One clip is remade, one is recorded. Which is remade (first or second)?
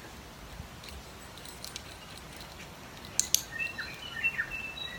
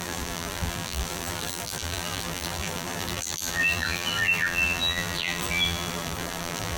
second